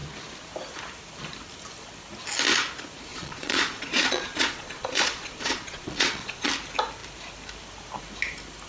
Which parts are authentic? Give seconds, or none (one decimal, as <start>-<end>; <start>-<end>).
0.0-3.1; 6.5-8.7